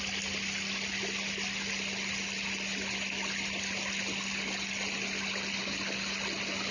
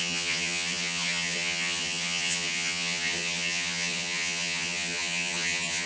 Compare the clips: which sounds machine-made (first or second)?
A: second